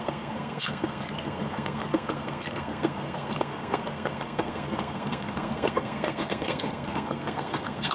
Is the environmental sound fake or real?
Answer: fake